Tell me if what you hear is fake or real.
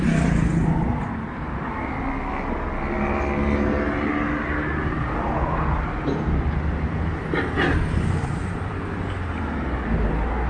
real